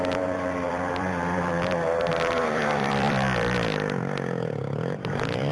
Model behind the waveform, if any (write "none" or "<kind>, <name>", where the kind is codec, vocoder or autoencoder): vocoder, BigVGAN v2